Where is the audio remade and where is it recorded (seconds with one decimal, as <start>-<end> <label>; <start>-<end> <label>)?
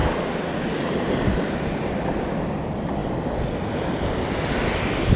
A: 0.0-5.2 recorded